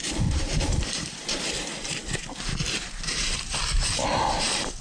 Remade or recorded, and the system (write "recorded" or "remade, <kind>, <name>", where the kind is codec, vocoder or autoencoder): remade, vocoder, BigVGAN v2